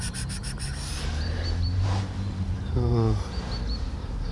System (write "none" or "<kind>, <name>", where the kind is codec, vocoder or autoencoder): vocoder, BigVGAN v2